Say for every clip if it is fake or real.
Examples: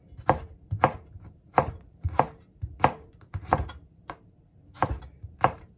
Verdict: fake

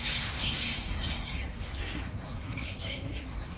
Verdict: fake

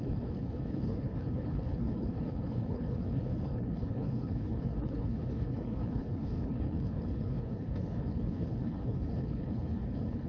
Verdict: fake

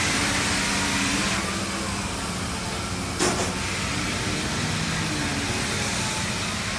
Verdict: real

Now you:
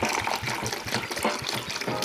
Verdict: real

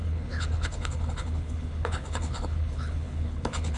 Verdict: fake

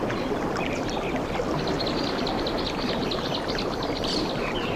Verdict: fake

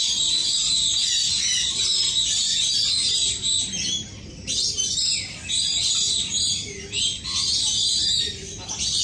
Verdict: real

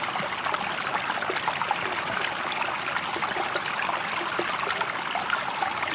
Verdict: real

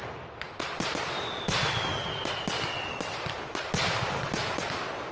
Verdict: real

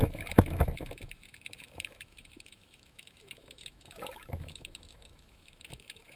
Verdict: fake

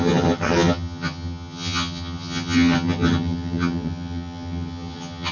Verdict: fake